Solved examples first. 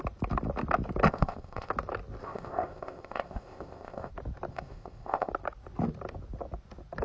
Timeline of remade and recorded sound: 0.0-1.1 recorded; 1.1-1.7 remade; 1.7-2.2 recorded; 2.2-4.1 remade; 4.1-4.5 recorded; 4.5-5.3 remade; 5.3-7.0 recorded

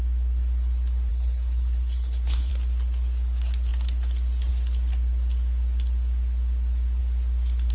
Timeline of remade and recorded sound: 0.0-1.1 recorded; 1.1-2.5 remade; 2.5-7.7 recorded

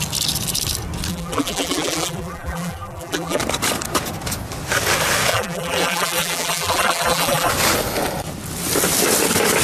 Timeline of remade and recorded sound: 0.0-1.1 recorded; 1.1-3.4 remade; 3.4-5.3 recorded; 5.3-7.5 remade; 7.5-9.6 recorded

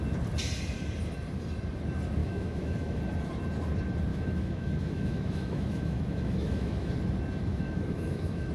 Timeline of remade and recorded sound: 0.0-2.2 recorded; 2.2-3.0 remade; 3.0-4.1 recorded; 4.1-6.9 remade; 6.9-7.5 recorded; 7.5-8.5 remade

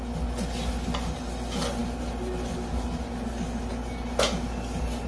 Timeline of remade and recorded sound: 0.0-5.1 recorded

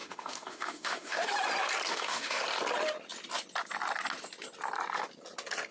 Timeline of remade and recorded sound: 0.0-1.3 remade; 1.3-1.9 recorded; 1.9-2.4 remade; 2.4-5.7 recorded

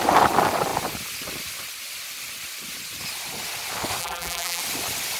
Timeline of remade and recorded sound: 0.0-4.0 recorded; 4.0-4.6 remade; 4.6-5.2 recorded

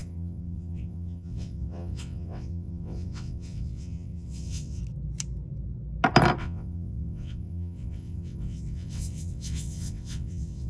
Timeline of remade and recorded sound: 0.0-4.8 remade; 4.8-6.4 recorded; 6.4-10.7 remade